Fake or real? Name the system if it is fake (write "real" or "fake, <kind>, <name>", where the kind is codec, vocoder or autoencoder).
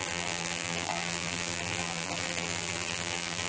fake, vocoder, BigVGAN v2